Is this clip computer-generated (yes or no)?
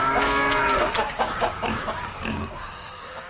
yes